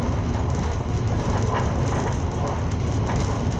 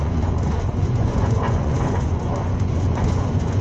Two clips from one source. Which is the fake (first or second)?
second